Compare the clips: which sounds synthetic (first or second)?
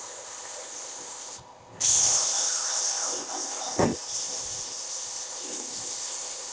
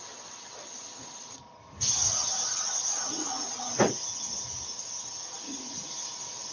first